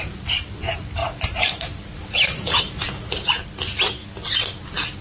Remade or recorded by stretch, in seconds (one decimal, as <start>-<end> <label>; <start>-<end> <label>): 0.0-1.0 recorded; 1.0-2.6 remade; 2.6-5.0 recorded